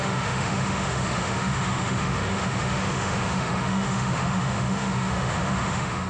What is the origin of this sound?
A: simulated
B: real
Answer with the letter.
A